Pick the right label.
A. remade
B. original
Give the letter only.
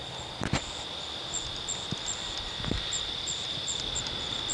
B